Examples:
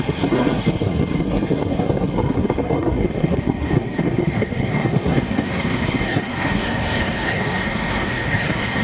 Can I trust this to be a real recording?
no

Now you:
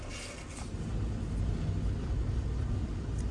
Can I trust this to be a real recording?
yes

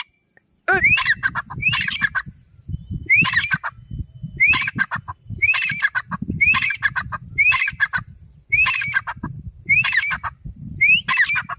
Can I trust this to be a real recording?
yes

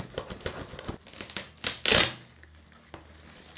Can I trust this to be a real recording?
yes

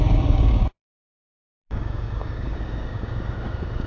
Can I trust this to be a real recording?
no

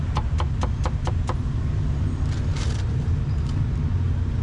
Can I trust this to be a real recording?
yes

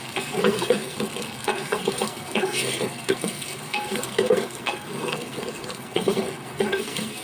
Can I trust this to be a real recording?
no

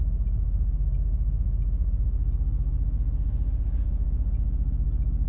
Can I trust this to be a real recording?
yes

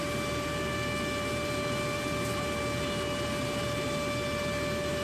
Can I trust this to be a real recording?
yes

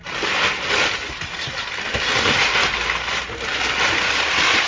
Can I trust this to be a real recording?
yes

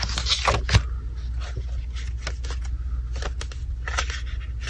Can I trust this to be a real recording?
yes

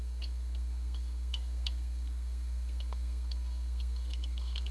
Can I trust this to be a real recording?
no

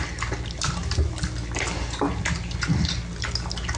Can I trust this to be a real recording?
yes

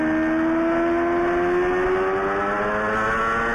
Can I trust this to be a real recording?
yes